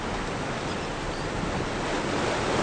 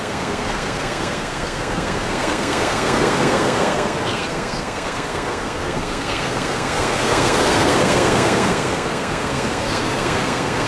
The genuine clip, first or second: first